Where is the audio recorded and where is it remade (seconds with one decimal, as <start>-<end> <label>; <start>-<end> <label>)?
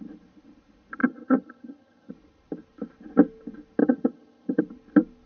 0.0-1.0 recorded; 1.0-2.1 remade; 2.1-3.8 recorded; 3.8-4.6 remade; 4.6-5.3 recorded